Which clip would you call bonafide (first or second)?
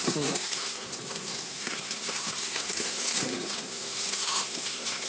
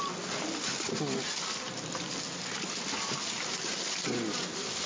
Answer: second